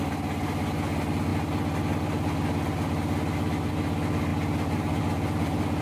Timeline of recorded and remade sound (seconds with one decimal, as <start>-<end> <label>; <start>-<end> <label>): 0.0-5.8 recorded

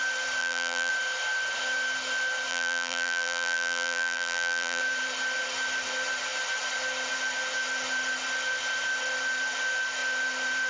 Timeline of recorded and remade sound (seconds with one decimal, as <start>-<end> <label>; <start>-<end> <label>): 0.0-0.4 recorded; 0.4-0.9 remade; 0.9-2.5 recorded; 2.5-4.8 remade; 4.8-10.7 recorded

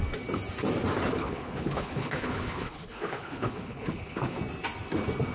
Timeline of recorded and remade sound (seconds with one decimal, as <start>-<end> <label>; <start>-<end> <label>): 0.0-1.2 recorded; 1.2-4.4 remade; 4.4-5.3 recorded